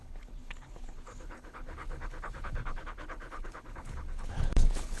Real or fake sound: fake